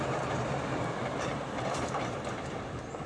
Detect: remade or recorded remade